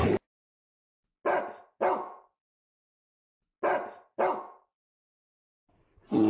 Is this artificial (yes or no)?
no